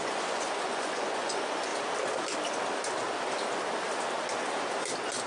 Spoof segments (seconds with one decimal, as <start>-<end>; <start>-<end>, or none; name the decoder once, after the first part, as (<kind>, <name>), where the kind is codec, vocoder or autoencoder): 0.0-1.7 (vocoder, Vocos)